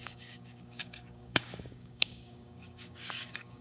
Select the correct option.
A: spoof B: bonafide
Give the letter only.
A